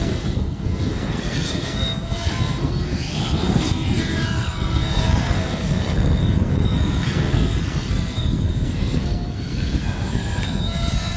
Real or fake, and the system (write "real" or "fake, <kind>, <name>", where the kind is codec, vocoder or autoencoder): fake, codec, SNAC